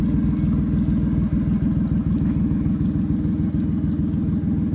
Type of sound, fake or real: real